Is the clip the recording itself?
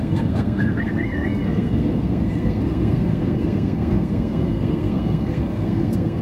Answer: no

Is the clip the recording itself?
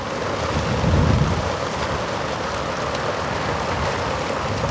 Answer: yes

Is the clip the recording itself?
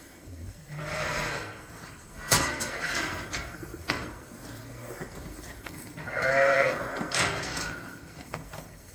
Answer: no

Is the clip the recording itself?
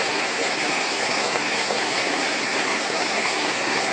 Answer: no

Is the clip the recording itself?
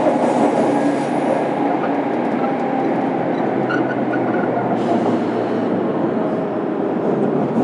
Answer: yes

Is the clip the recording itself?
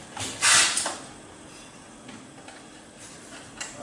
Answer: yes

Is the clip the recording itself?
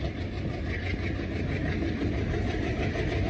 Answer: yes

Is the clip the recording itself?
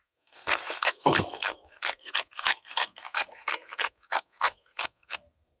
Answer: no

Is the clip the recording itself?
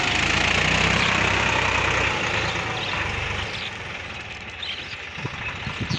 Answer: yes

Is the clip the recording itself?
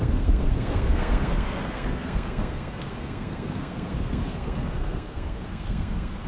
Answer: no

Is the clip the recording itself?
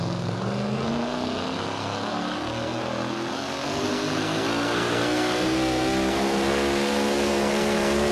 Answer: no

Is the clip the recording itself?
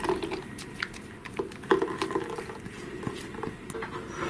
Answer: yes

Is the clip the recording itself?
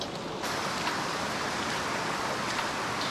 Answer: yes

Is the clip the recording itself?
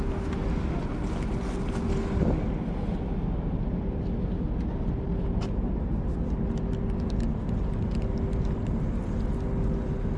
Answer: yes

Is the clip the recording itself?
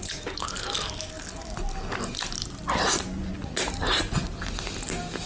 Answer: yes